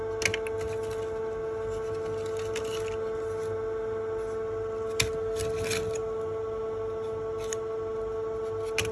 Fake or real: real